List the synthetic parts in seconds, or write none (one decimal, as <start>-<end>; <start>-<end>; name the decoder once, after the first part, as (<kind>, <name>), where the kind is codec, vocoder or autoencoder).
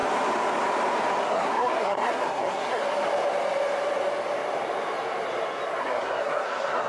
1.2-2.8 (codec, SNAC); 5.8-6.9